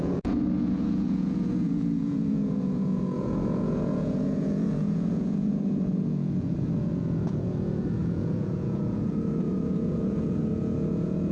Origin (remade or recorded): remade